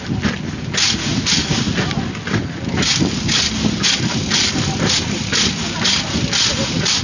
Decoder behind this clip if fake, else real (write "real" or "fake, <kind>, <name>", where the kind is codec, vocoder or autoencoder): real